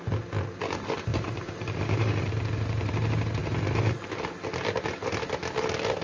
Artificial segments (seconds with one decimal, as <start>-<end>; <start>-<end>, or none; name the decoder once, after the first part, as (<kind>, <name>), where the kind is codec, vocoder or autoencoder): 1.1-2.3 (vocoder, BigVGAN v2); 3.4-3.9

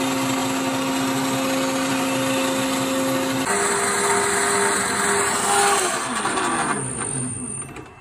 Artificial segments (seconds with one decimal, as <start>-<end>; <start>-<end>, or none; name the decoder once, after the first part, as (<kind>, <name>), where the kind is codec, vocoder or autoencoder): none

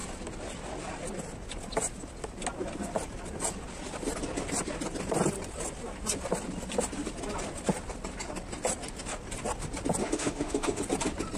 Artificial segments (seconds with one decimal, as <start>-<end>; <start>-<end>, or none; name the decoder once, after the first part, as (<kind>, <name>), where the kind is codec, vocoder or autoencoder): 10.0-10.8 (autoencoder, DAC-VAE)

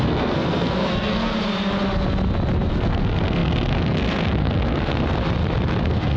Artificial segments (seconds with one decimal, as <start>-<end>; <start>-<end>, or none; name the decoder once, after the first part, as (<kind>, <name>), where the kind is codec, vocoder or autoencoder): 0.0-1.3 (codec, SNAC); 2.7-5.0; 5.8-6.2

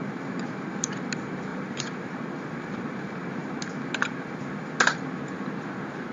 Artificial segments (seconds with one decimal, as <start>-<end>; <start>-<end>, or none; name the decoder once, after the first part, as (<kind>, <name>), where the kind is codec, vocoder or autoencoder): 1.5-2.1 (vocoder, BigVGAN v2)